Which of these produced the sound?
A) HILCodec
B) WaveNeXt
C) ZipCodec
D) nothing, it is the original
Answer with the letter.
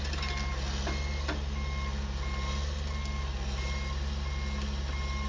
D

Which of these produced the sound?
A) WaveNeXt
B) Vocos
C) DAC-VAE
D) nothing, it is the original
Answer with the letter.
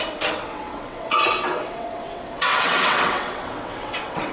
A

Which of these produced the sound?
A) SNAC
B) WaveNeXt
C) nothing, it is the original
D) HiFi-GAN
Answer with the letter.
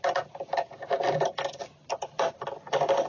C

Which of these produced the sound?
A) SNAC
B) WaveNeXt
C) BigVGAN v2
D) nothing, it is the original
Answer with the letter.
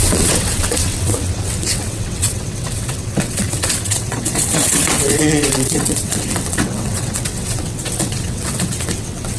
B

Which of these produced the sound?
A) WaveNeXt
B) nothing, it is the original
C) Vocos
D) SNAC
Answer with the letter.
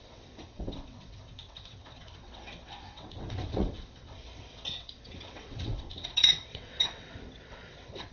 A